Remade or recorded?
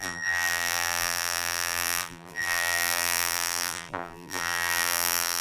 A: remade